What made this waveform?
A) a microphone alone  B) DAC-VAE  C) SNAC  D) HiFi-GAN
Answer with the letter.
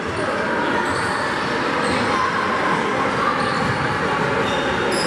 A